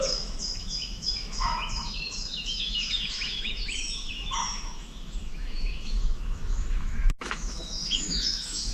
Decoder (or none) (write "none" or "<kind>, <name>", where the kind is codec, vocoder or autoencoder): autoencoder, DAC-VAE